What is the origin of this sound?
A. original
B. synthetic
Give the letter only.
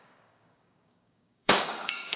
B